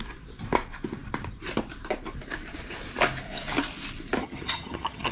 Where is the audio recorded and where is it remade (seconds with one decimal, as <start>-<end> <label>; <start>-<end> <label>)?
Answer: 0.0-4.2 recorded; 4.2-5.1 remade